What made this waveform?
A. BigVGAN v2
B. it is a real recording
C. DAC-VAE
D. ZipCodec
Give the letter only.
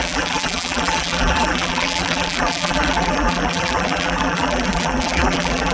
A